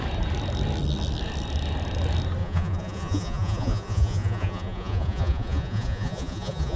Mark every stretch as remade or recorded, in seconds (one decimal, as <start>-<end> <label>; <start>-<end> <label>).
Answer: 0.0-2.4 recorded; 2.4-6.8 remade